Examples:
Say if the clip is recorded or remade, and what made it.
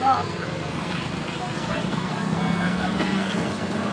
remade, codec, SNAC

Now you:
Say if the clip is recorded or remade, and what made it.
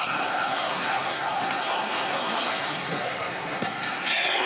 remade, codec, SNAC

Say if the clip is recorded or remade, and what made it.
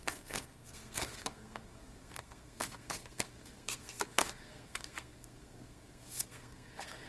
remade, codec, SNAC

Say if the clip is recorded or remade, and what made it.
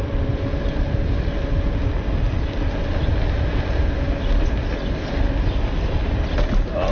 recorded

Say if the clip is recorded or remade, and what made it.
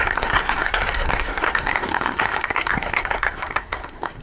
remade, codec, SNAC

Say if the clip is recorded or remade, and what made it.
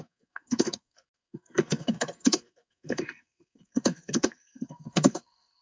remade, codec, SNAC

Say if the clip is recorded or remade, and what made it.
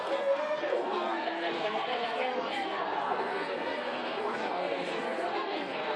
remade, codec, SNAC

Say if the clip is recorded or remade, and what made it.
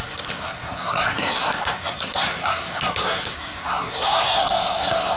remade, codec, SNAC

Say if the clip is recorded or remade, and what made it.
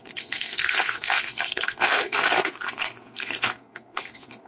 remade, codec, SNAC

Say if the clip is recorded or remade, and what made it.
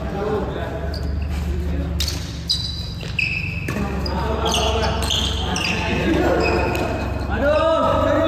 recorded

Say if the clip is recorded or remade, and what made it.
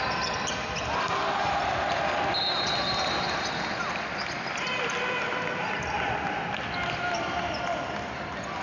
recorded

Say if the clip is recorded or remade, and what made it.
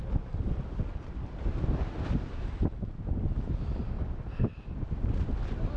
recorded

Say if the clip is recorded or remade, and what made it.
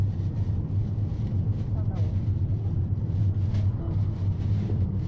recorded